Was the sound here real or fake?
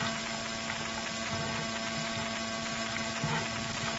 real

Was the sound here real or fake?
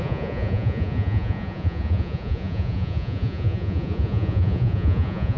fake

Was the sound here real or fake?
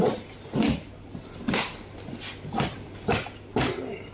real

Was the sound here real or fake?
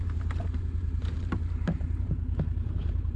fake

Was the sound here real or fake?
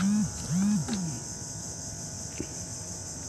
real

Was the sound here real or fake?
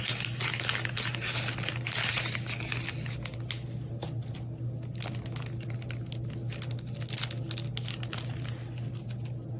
real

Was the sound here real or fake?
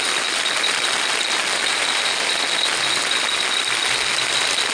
real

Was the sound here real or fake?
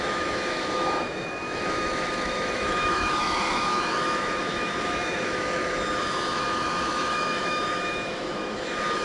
fake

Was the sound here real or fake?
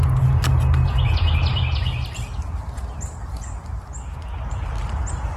real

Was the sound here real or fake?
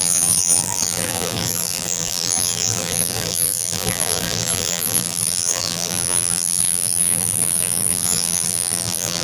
fake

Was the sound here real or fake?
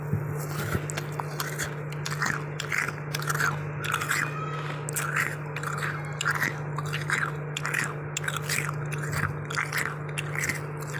real